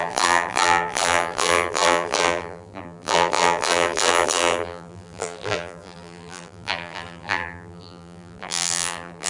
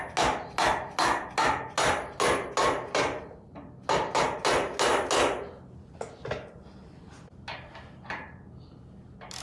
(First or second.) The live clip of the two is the second